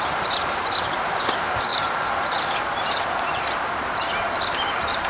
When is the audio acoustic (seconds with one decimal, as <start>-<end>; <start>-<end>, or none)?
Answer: none